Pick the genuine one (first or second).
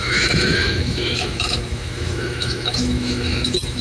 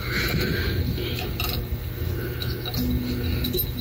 second